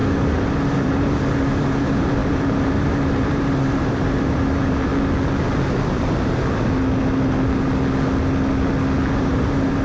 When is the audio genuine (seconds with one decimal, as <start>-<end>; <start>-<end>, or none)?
4.9-9.2